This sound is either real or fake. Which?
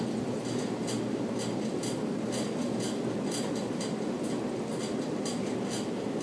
real